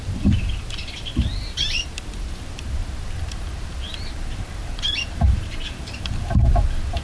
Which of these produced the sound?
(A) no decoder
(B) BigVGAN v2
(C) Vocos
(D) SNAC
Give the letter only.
B